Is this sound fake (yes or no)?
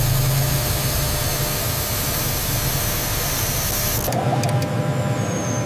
no